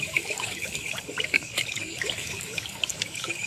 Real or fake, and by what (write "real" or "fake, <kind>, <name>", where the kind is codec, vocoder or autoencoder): fake, codec, DAC